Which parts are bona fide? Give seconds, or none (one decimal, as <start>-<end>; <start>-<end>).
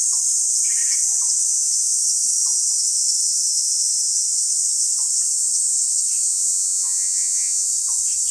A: 0.0-6.3; 7.7-8.3